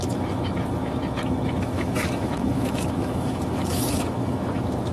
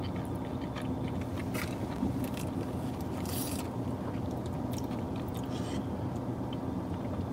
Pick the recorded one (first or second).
second